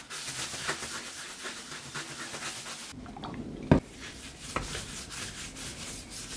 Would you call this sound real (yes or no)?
yes